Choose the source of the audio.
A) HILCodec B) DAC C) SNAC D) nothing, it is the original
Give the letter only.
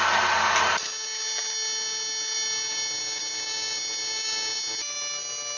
D